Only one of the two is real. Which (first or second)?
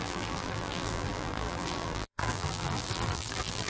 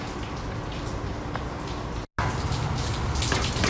second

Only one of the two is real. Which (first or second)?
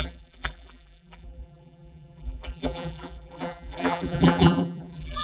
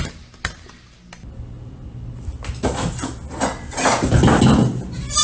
second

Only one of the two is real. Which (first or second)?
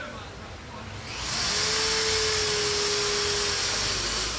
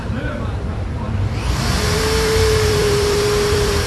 first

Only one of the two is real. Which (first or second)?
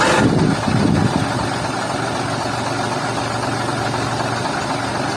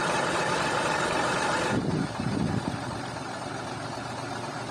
first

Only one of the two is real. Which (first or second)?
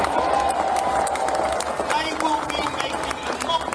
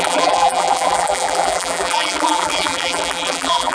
first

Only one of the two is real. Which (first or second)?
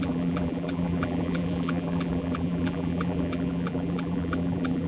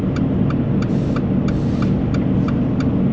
second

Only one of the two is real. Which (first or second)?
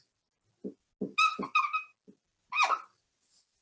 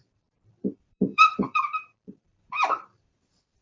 first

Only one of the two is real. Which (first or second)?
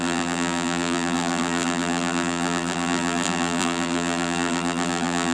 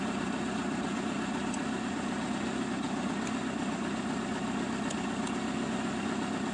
second